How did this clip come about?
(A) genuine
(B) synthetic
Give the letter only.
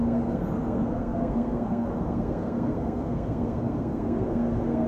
B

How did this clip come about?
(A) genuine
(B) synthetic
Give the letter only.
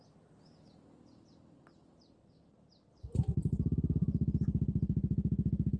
A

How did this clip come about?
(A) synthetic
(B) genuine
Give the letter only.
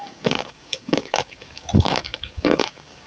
A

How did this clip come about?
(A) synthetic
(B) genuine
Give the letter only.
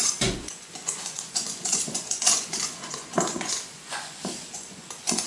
A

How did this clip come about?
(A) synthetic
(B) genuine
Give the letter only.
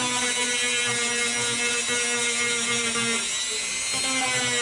B